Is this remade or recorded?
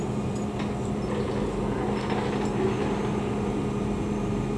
recorded